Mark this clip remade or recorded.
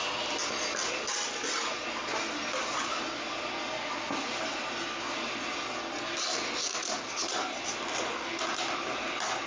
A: recorded